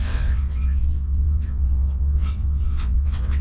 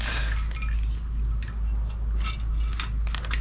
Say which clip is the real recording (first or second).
second